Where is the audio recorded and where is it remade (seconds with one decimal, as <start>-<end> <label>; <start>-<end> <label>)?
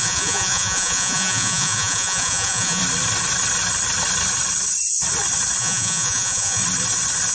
0.0-2.8 remade; 2.8-5.6 recorded; 5.6-6.6 remade; 6.6-7.3 recorded